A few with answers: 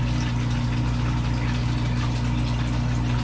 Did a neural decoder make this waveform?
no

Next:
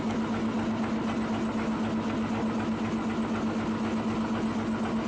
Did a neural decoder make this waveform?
no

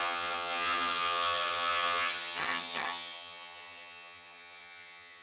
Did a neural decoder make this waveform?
yes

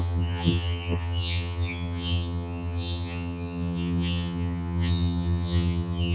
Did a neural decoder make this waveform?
yes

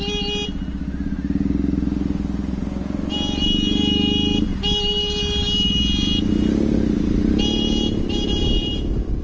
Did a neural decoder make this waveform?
no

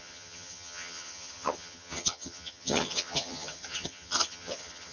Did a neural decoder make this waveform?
yes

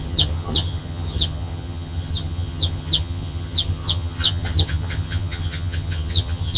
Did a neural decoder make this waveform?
yes